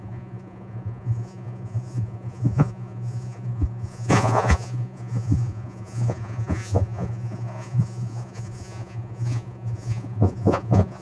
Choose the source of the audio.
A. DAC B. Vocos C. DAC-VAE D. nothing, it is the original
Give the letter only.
B